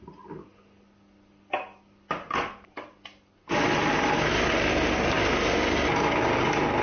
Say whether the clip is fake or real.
real